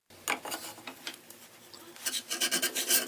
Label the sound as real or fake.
real